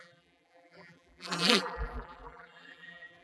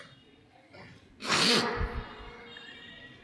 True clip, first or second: second